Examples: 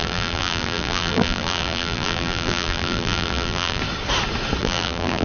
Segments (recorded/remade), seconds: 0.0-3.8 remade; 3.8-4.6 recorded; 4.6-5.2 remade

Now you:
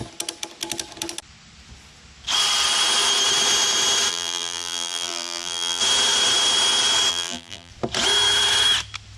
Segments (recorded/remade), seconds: 0.0-4.1 recorded; 4.1-5.8 remade; 5.8-7.1 recorded; 7.1-7.7 remade; 7.7-9.2 recorded

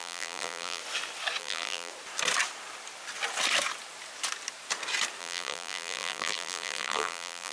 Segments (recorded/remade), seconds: 0.0-0.8 remade; 0.8-1.4 recorded; 1.4-1.9 remade; 1.9-5.2 recorded; 5.2-7.5 remade